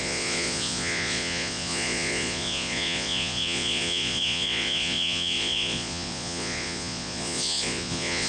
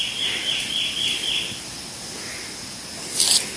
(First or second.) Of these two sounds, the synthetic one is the first